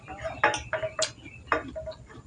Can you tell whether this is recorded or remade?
recorded